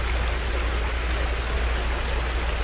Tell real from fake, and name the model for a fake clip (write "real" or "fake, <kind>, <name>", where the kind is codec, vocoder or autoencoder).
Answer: real